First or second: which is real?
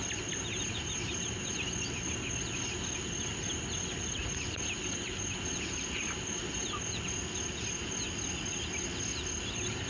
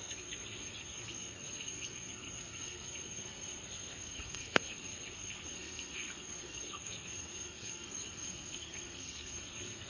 first